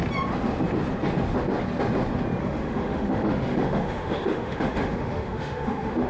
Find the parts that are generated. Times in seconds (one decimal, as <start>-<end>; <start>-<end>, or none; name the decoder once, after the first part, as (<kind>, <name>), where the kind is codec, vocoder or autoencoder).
2.4-6.1 (autoencoder, DAC-VAE)